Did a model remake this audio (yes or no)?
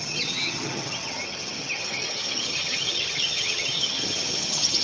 yes